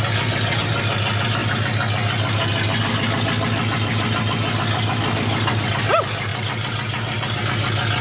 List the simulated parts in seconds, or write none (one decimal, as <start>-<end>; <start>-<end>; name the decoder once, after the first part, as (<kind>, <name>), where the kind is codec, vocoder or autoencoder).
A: 6.3-7.4 (vocoder, BigVGAN v2)